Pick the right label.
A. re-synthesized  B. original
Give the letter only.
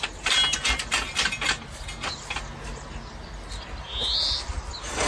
B